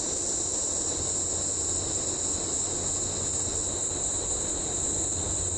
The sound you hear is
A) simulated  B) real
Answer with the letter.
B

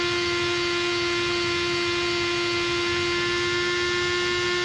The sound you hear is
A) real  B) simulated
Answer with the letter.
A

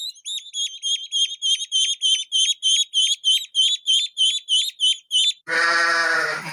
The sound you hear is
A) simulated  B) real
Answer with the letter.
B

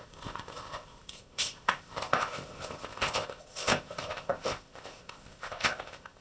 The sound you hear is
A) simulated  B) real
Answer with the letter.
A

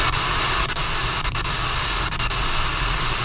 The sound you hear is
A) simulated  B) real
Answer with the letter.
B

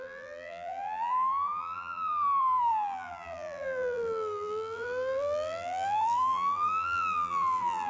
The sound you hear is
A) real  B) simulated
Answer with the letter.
B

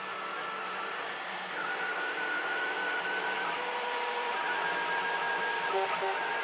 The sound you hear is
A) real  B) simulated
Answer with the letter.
A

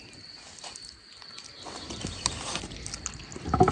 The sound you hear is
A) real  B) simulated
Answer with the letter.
A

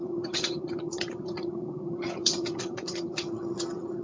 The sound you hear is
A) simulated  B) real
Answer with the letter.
A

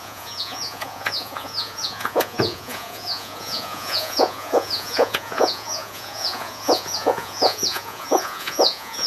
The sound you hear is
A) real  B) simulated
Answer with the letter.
B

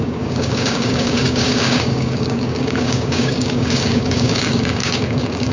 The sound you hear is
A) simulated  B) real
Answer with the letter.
A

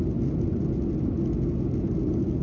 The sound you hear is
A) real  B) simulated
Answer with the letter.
A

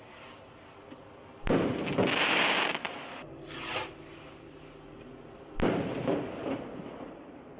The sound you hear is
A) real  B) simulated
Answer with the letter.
A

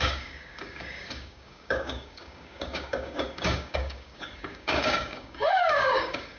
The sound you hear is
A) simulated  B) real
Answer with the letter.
A